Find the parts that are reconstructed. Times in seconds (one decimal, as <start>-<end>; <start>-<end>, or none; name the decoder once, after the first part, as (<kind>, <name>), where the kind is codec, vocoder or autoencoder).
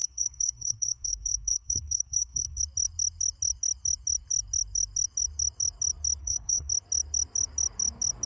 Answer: 0.0-2.6 (codec, SNAC); 6.2-6.7